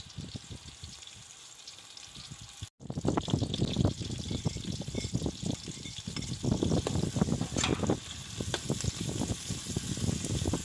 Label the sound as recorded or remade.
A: recorded